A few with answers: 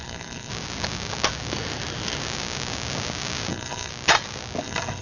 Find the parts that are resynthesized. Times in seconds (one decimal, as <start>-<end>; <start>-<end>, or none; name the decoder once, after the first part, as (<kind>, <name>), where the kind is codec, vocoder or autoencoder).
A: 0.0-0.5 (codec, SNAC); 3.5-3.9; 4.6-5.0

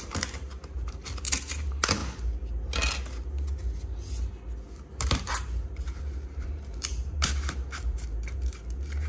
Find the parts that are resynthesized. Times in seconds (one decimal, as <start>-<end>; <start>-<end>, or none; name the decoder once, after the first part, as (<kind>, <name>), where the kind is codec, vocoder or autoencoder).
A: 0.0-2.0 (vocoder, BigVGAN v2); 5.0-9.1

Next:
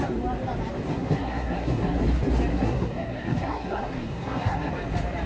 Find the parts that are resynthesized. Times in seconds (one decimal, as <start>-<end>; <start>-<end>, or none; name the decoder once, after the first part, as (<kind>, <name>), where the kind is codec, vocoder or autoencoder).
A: 0.9-2.0 (codec, SNAC); 2.5-4.7

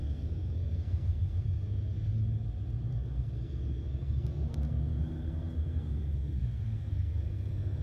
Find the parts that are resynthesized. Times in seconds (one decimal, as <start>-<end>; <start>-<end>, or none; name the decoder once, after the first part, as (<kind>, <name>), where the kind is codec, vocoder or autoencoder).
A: 0.0-2.2 (codec, SNAC); 2.9-7.8

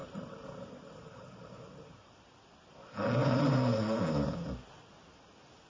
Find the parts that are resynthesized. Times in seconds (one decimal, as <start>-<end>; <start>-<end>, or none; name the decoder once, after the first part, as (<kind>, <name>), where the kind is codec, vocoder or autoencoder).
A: 0.0-2.1 (vocoder, BigVGAN v2); 3.2-4.0

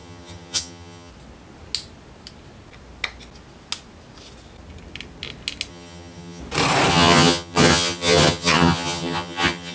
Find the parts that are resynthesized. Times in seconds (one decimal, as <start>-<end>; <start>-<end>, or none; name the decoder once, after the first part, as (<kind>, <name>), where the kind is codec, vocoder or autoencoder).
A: 0.0-1.1 (vocoder, HiFi-GAN); 5.7-6.4; 6.9-9.7

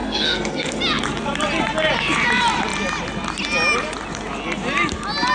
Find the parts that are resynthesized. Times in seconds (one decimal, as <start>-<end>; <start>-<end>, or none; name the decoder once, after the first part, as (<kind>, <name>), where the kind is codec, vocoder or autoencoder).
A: 0.0-0.8 (codec, SNAC)